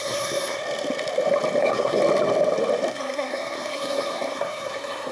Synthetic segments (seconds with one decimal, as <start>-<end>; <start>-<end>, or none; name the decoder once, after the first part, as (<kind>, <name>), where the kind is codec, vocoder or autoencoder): 0.0-0.6 (codec, SNAC); 1.6-2.0; 2.9-5.1